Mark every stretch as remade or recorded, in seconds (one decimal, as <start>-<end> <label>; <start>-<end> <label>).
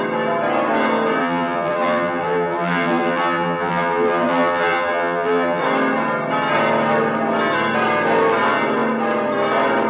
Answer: 0.0-1.2 recorded; 1.2-5.6 remade; 5.6-9.9 recorded